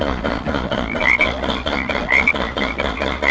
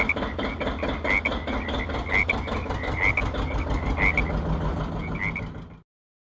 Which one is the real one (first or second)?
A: second